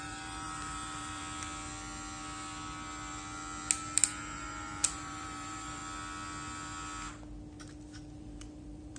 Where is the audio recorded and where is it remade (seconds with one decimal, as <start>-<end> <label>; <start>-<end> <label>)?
0.0-1.2 remade; 1.2-4.2 recorded; 4.2-5.8 remade; 5.8-8.2 recorded; 8.2-9.0 remade